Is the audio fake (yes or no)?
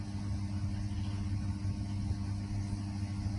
no